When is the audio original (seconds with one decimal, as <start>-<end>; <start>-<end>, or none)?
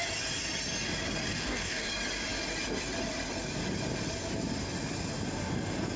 0.0-1.3; 1.9-6.0